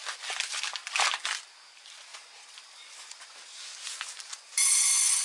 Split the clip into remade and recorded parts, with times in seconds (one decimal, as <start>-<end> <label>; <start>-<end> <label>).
0.0-5.2 recorded